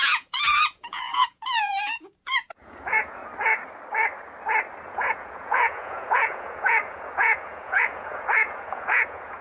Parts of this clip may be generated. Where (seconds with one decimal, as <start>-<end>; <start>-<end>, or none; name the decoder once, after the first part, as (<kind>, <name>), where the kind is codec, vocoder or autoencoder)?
0.0-3.2 (vocoder, Vocos); 4.9-9.4